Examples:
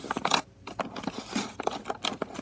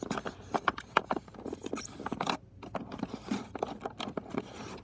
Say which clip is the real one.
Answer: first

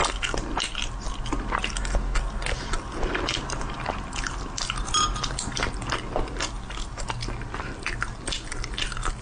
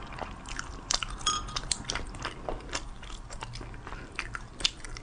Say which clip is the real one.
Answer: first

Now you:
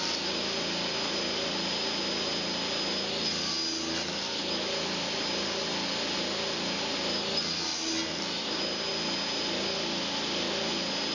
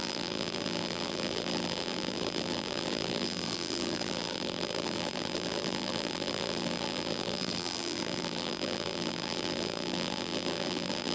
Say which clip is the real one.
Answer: first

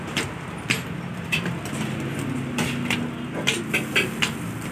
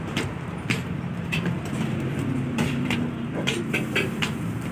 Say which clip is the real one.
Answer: first